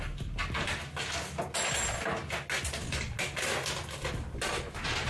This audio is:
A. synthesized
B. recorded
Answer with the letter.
B